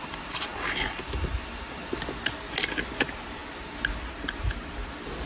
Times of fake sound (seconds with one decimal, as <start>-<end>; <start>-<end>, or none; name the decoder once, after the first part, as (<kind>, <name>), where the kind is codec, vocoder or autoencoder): none